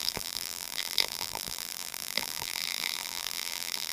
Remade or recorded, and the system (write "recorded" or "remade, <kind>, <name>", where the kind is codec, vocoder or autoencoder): remade, vocoder, BigVGAN v2